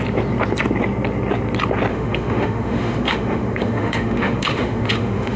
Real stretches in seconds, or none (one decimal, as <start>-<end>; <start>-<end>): 0.0-1.9